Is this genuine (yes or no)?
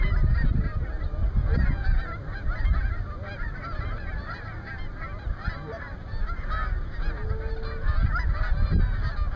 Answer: yes